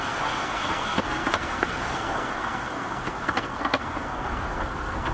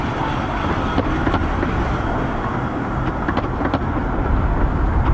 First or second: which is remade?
first